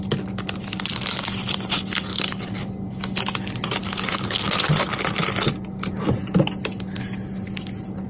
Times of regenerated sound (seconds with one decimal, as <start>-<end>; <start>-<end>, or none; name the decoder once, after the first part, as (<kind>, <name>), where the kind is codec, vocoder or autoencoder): 2.1-2.7 (codec, HILCodec); 3.8-4.7